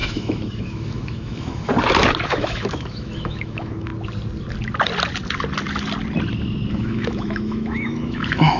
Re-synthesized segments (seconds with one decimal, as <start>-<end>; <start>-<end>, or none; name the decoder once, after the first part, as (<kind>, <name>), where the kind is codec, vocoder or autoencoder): 0.0-1.7 (autoencoder, DAC-VAE); 2.3-3.9; 6.7-8.6